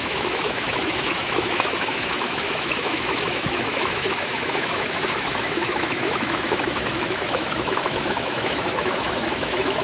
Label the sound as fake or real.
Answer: fake